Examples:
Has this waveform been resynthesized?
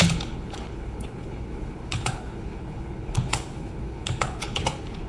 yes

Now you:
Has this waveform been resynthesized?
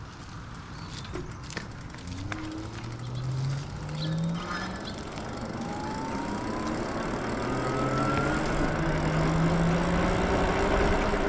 no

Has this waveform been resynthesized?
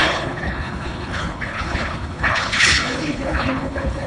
yes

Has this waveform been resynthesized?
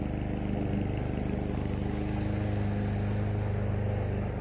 no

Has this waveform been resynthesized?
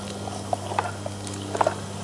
no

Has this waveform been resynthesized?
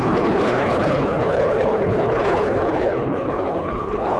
yes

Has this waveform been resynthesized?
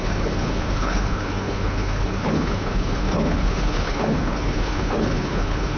yes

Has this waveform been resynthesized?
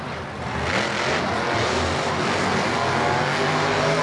no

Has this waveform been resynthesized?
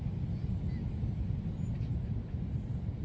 no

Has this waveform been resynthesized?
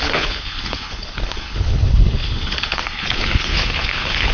yes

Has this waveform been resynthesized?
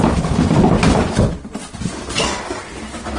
no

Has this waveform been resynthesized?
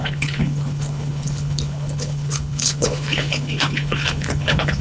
yes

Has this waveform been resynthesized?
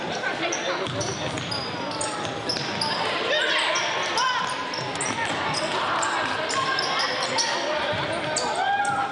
no